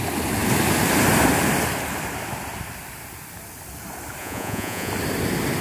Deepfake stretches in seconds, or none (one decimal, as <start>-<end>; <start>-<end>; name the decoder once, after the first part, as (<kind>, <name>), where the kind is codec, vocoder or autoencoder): 4.2-4.9 (vocoder, Vocos)